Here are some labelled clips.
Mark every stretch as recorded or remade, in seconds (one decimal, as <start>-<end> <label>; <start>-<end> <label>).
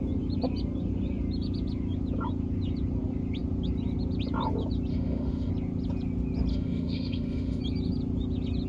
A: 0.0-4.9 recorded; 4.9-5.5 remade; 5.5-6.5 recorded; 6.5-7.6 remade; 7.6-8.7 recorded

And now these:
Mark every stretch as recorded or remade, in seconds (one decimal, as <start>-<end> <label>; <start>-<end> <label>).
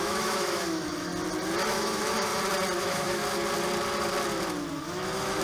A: 0.0-1.1 remade; 1.1-1.7 recorded; 1.7-2.3 remade; 2.3-2.8 recorded; 2.8-3.2 remade; 3.2-4.7 recorded; 4.7-5.4 remade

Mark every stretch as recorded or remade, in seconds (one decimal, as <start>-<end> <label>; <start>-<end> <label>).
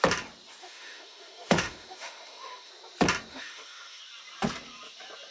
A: 0.0-0.6 recorded; 0.6-2.7 remade; 2.7-3.3 recorded; 3.3-4.0 remade; 4.0-5.3 recorded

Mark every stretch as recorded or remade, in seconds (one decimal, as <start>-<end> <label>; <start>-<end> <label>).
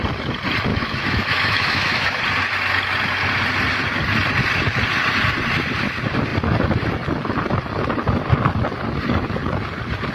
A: 0.0-0.7 recorded; 0.7-2.2 remade; 2.2-10.1 recorded